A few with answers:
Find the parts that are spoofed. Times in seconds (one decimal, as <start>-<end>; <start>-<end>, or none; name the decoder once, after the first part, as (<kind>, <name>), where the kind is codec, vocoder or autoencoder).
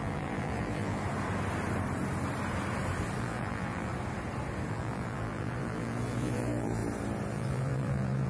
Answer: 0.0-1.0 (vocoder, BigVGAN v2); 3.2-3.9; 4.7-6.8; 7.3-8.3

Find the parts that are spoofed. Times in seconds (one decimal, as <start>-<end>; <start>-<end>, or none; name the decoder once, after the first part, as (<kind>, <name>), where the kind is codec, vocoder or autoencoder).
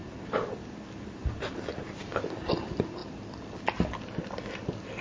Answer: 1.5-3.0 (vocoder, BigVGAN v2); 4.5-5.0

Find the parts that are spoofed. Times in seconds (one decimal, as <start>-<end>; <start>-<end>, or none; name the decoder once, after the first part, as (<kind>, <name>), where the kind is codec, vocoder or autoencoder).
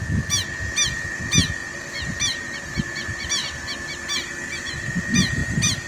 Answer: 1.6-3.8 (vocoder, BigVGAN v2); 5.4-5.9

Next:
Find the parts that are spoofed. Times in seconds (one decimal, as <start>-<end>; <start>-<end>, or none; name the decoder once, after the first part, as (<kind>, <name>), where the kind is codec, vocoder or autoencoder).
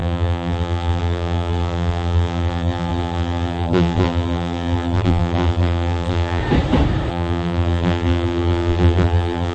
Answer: 0.0-6.4 (vocoder, BigVGAN v2); 7.1-9.5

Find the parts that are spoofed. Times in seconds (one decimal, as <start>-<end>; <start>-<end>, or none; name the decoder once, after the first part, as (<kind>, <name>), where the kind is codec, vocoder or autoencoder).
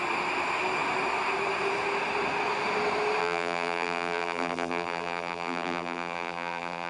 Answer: 3.2-6.9 (vocoder, BigVGAN v2)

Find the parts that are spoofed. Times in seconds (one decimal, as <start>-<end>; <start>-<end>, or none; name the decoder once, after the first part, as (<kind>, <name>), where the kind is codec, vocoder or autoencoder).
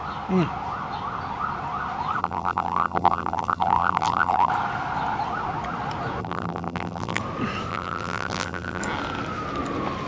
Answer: 2.2-4.5 (vocoder, BigVGAN v2); 6.2-7.2; 7.7-8.8